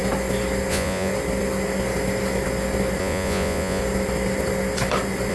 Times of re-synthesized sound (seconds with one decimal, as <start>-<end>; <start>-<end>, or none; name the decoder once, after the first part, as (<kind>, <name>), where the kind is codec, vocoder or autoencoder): 0.7-1.1 (vocoder, Vocos); 3.0-3.8